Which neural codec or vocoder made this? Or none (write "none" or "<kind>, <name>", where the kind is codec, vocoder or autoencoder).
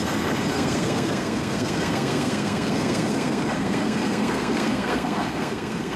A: codec, SNAC